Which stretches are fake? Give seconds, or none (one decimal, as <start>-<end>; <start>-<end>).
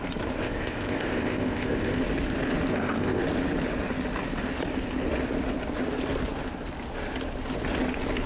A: 0.4-2.0; 2.7-3.2